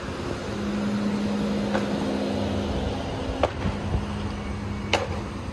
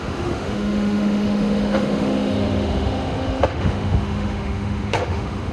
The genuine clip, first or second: first